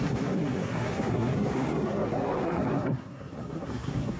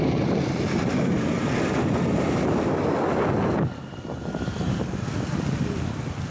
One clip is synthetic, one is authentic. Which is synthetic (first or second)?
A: first